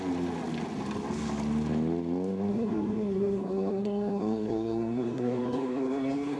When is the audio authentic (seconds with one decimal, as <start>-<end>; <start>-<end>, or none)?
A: 0.0-2.5